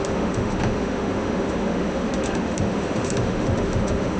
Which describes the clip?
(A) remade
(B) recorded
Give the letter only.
A